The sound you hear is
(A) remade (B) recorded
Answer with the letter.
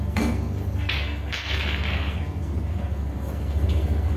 A